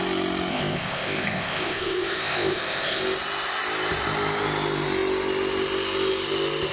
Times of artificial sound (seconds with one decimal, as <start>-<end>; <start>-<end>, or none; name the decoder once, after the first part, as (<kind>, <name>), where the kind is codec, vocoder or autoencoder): 0.5-3.0 (codec, ZipCodec)